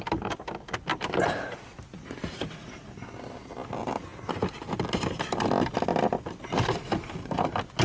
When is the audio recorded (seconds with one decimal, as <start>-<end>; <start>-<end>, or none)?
0.0-7.8